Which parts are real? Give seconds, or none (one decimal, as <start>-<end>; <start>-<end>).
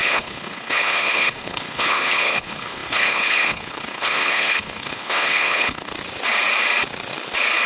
5.9-7.7